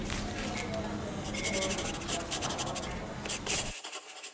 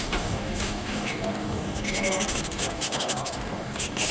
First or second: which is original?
first